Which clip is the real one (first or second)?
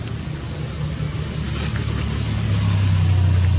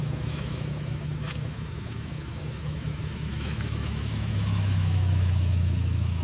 first